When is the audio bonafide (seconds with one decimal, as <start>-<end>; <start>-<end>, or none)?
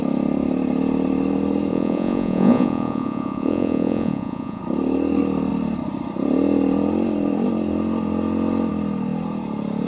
0.0-1.7; 4.6-9.9